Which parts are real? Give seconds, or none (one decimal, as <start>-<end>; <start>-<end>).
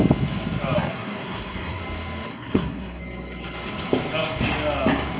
0.0-0.9; 1.8-2.3; 3.0-5.2